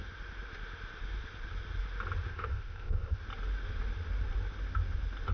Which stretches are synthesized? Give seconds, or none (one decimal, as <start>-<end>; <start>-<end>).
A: 2.3-3.2